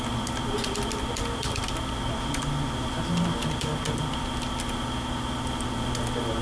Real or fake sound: real